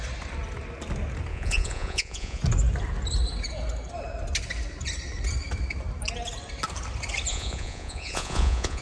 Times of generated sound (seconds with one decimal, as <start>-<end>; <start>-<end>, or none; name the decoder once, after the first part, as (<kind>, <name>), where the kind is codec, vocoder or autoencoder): 1.3-2.4 (vocoder, Vocos); 7.3-8.8